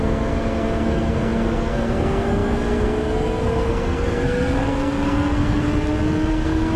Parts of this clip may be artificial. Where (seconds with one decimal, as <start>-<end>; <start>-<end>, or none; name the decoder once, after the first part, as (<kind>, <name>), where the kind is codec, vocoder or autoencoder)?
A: 0.0-5.7 (codec, SNAC); 6.3-6.8